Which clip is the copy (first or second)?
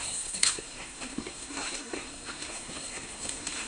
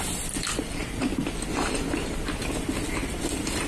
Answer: first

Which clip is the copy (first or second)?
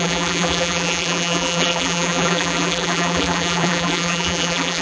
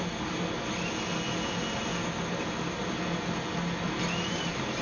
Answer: first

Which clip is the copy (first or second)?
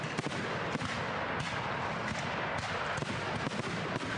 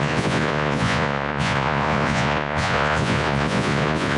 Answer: second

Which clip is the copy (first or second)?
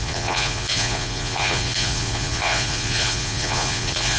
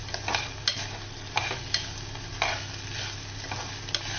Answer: first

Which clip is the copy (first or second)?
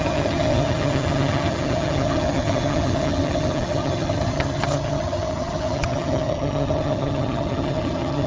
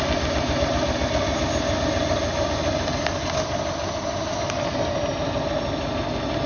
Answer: first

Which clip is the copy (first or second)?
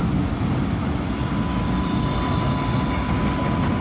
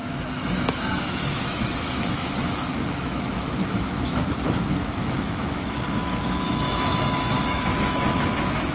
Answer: second